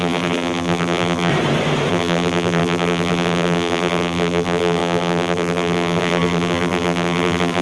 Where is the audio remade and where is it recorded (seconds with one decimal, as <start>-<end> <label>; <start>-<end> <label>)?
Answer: 0.0-1.3 remade; 1.3-1.9 recorded; 1.9-7.6 remade